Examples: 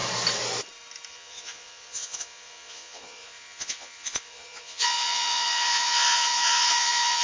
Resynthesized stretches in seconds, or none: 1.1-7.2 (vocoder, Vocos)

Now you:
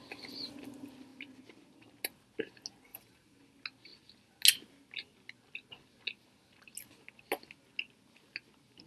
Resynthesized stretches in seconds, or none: 2.9-3.4 (vocoder, BigVGAN v2)

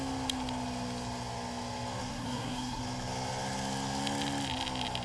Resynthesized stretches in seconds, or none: 2.1-2.8 (codec, SNAC)

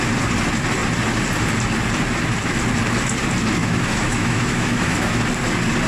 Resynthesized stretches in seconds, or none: 3.6-5.2 (autoencoder, DAC-VAE)

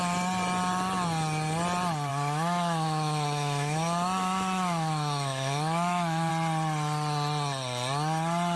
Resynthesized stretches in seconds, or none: 2.1-6.3 (autoencoder, DAC-VAE)